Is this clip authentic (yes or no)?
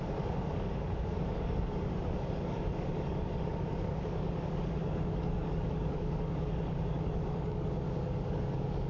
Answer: no